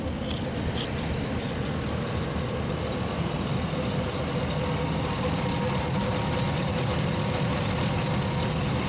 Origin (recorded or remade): recorded